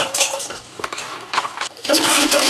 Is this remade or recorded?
remade